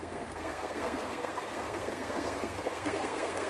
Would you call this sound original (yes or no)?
no